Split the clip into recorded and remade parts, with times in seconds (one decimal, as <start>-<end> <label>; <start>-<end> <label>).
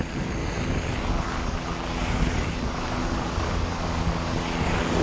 0.0-0.4 remade; 0.4-1.1 recorded; 1.1-5.0 remade